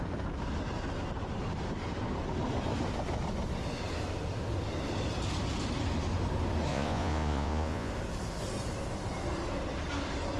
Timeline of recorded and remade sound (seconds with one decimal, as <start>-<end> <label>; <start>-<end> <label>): 0.0-6.7 recorded; 6.7-7.9 remade; 7.9-10.4 recorded